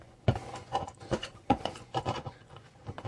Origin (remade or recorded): remade